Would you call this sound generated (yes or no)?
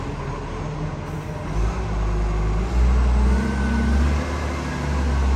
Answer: no